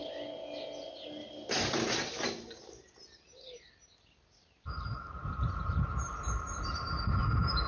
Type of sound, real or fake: real